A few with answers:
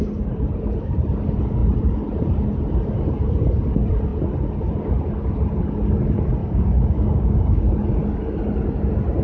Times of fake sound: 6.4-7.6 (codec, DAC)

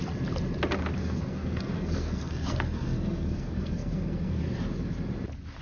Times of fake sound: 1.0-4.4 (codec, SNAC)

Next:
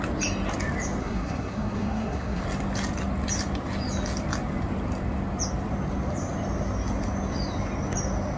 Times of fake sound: 1.0-2.4 (codec, SNAC)

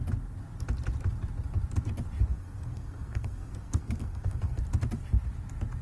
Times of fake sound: 2.3-4.6 (codec, SNAC)

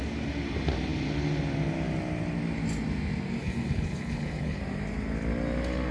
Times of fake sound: 3.4-4.6 (codec, HILCodec)

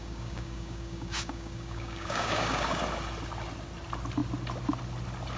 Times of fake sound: 0.0-2.8 (codec, DAC)

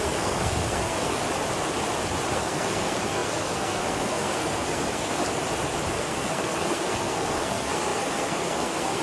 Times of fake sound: 0.0-1.2 (codec, SNAC); 2.3-5.2; 5.9-9.0